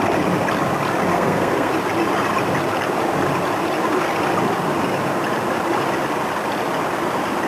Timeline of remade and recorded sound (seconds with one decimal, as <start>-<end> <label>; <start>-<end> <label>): 0.0-1.1 recorded; 1.1-1.7 remade; 1.7-7.5 recorded

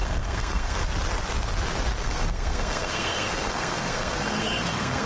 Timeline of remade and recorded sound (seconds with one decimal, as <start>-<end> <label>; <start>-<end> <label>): 0.0-0.8 remade; 0.8-2.0 recorded; 2.0-5.1 remade

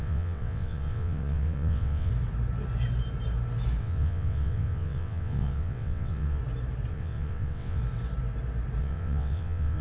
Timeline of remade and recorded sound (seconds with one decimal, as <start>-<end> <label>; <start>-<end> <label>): 0.0-2.1 remade; 2.1-3.8 recorded; 3.8-6.4 remade; 6.4-6.9 recorded; 6.9-7.8 remade; 7.8-8.8 recorded; 8.8-9.8 remade

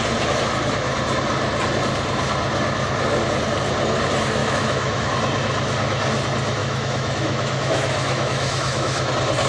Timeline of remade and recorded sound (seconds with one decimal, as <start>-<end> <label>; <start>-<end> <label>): 0.0-4.4 recorded; 4.4-5.1 remade; 5.1-6.6 recorded; 6.6-9.1 remade; 9.1-9.5 recorded

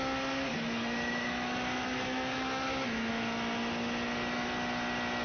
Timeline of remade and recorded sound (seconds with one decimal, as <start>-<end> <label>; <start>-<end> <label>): 0.0-0.5 recorded; 0.5-3.1 remade; 3.1-5.2 recorded

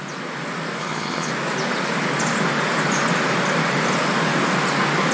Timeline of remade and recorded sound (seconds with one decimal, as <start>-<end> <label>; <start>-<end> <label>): 0.0-0.8 recorded; 0.8-1.3 remade; 1.3-5.1 recorded